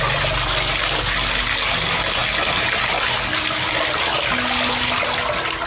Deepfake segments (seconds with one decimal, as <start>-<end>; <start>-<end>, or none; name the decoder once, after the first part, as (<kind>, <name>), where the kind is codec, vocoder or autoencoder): none